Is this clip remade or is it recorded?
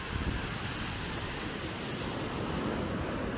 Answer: recorded